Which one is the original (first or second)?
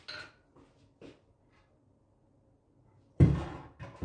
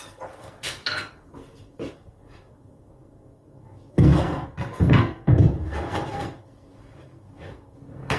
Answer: first